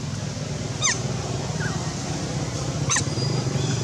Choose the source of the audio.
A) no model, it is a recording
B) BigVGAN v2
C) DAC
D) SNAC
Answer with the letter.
A